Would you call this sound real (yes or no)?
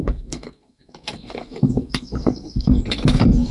no